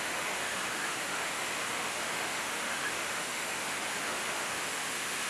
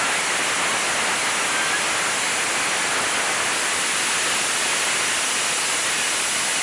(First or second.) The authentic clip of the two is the second